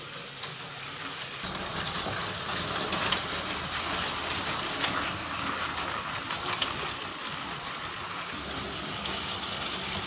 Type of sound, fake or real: real